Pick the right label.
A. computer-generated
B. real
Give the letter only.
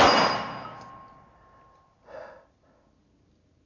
B